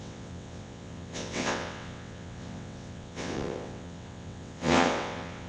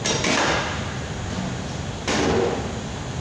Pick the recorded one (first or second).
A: second